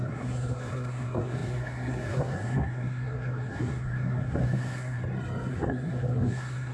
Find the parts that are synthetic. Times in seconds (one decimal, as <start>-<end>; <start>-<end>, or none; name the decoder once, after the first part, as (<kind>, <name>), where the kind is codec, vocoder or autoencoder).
0.0-5.0 (codec, SNAC); 5.5-6.7